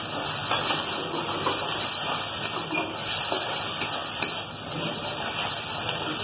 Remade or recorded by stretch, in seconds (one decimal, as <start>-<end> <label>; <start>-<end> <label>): 0.0-6.2 recorded